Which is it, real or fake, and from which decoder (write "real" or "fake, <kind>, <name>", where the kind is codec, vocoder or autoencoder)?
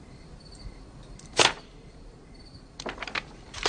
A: fake, vocoder, BigVGAN v2